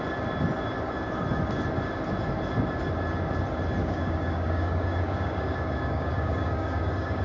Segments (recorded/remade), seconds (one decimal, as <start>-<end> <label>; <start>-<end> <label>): 0.0-3.8 recorded; 3.8-7.2 remade